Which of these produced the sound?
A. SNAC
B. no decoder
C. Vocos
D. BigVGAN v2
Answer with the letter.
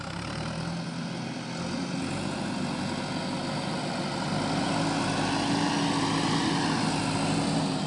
B